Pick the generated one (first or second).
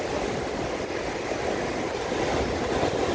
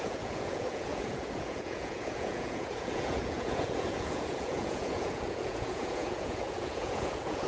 second